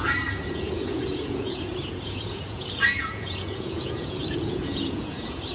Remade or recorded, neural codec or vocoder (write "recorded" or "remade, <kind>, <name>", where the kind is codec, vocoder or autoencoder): remade, vocoder, Vocos